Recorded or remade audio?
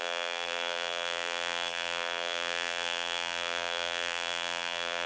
remade